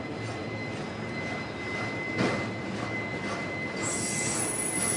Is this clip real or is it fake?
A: real